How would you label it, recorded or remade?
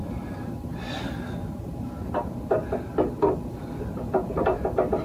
recorded